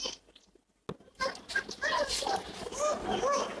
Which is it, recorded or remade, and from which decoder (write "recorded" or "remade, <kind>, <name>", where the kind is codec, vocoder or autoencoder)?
recorded